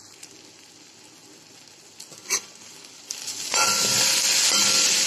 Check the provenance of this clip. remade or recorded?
recorded